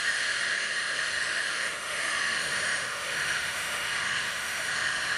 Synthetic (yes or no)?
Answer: yes